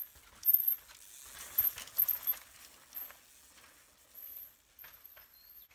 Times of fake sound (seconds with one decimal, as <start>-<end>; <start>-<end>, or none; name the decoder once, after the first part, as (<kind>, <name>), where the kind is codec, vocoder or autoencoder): none